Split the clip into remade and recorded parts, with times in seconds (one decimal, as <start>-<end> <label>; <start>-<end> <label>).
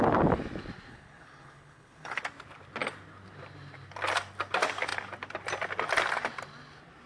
0.0-0.9 recorded; 0.9-2.2 remade; 2.2-7.1 recorded